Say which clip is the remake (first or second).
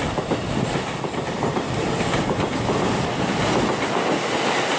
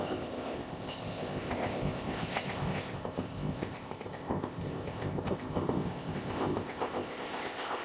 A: second